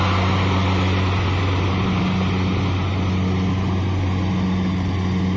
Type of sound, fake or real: real